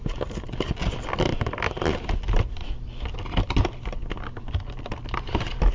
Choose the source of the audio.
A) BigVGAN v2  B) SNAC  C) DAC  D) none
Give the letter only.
D